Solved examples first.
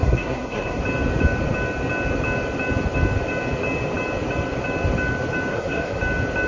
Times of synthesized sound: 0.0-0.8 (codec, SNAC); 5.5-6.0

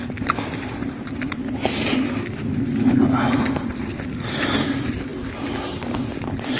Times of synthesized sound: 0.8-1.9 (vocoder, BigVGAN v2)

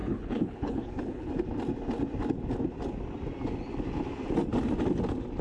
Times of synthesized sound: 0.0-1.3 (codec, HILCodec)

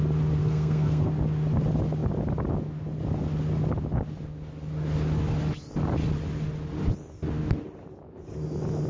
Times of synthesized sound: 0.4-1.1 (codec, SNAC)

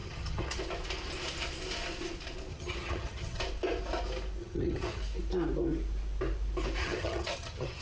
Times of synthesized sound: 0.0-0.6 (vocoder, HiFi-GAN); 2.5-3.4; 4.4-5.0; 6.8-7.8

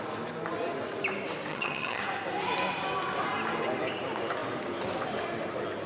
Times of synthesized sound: 1.5-2.0 (vocoder, HiFi-GAN)

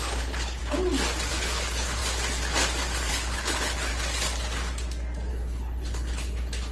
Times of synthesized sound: 0.0-0.6 (codec, HILCodec); 1.3-2.0; 3.1-3.9; 5.3-6.7